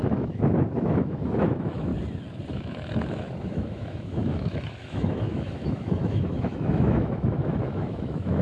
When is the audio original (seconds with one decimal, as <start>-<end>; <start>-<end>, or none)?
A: 1.9-2.5